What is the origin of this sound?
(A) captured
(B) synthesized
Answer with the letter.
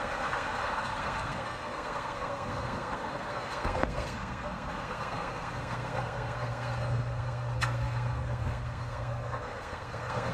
B